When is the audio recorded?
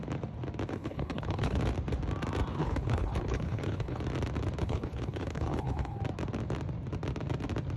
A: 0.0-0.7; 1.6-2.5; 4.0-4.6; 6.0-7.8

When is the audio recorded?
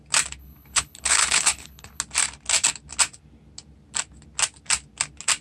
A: 0.0-0.4; 2.0-5.4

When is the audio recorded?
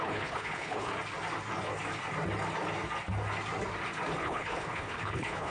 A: 0.9-4.2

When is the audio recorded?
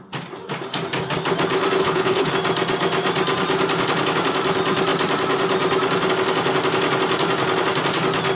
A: 0.0-1.8; 2.3-8.4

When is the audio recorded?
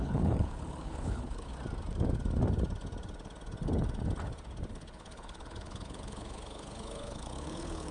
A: 1.5-4.7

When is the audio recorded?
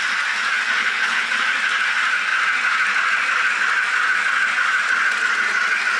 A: 0.0-0.8; 1.3-6.0